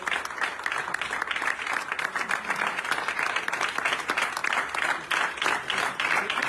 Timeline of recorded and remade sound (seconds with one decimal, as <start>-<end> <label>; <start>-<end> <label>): 0.0-4.4 remade; 4.4-5.5 recorded; 5.5-6.5 remade